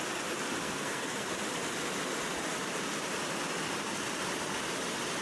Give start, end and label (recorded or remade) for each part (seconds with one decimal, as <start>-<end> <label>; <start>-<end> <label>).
0.0-0.6 recorded; 0.6-1.3 remade; 1.3-5.2 recorded